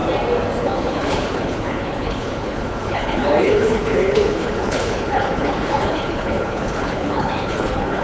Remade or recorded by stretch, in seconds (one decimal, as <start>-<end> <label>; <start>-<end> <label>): 0.0-0.6 recorded; 0.6-8.0 remade